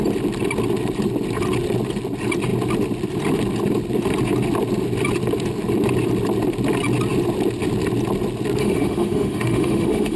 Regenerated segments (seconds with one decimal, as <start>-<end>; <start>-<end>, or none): 8.6-10.2